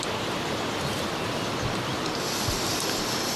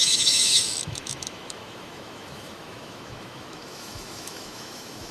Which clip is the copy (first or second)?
second